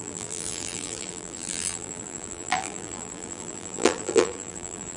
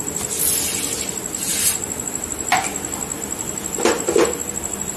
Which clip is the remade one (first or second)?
first